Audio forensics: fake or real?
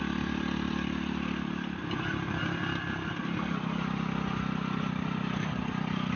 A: real